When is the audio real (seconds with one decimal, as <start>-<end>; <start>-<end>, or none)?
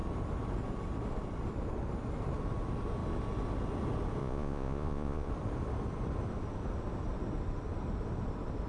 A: 0.0-4.2; 5.3-8.7